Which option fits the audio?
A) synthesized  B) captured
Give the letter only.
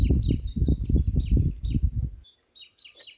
B